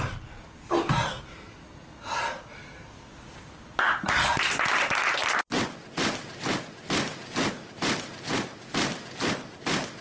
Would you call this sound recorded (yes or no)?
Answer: yes